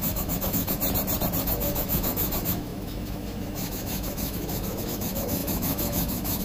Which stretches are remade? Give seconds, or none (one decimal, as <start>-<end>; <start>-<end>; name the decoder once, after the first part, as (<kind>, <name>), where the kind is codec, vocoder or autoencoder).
0.0-0.8 (autoencoder, DAC-VAE); 1.4-6.4